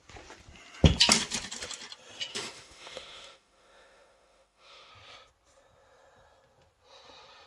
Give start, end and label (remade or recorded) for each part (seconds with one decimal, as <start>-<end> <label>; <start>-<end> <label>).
0.0-2.3 recorded; 2.3-4.9 remade; 4.9-7.5 recorded